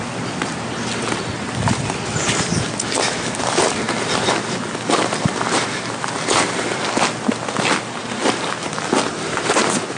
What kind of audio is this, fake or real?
real